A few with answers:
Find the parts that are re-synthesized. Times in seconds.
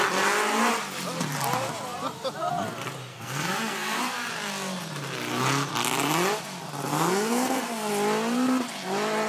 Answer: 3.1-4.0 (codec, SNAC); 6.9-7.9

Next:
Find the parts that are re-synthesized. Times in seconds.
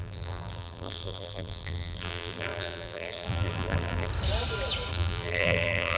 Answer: 0.0-4.1 (vocoder, BigVGAN v2); 4.9-6.0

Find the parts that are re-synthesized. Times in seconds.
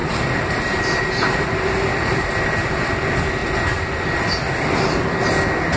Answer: 0.0-2.9 (vocoder, BigVGAN v2)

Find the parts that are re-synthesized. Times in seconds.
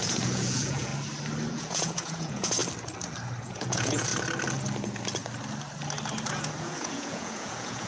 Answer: 0.0-0.9 (vocoder, Vocos); 1.5-2.6; 3.4-4.1; 6.6-7.9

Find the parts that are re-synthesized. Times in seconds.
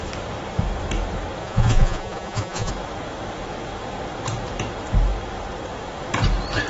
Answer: 1.4-2.7 (vocoder, Vocos)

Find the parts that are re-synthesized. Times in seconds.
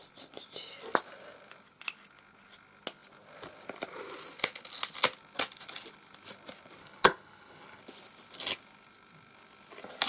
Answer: 6.8-7.8 (codec, HILCodec)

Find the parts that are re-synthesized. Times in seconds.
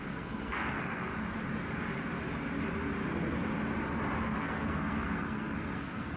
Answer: 0.0-1.1 (codec, SNAC); 4.4-6.2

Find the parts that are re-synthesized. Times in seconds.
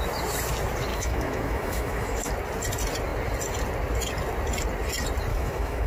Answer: 0.9-2.3 (autoencoder, DAC-VAE); 5.3-5.9